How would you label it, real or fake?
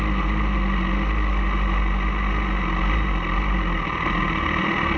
real